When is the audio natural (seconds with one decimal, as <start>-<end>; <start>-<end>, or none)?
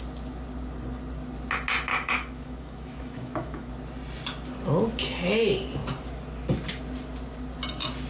0.0-1.9; 3.7-8.1